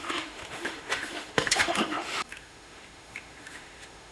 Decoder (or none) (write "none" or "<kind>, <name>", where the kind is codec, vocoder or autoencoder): autoencoder, DAC-VAE